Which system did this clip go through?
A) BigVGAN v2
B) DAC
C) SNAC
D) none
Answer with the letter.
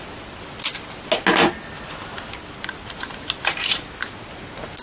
D